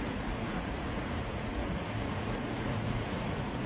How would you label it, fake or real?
fake